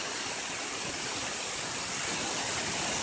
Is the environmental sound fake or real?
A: real